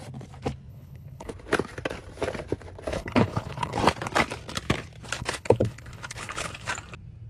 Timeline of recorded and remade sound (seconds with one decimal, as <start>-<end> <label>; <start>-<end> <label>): 0.0-0.7 recorded; 0.7-1.3 remade; 1.3-2.9 recorded; 2.9-3.8 remade; 3.8-5.2 recorded; 5.2-6.7 remade; 6.7-7.3 recorded